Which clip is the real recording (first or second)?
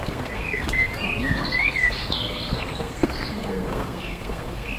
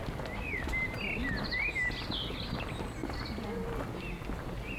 second